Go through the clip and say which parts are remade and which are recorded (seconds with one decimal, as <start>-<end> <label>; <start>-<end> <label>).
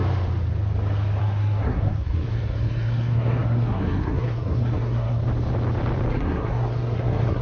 0.0-1.2 recorded; 1.2-5.2 remade; 5.2-6.1 recorded; 6.1-7.4 remade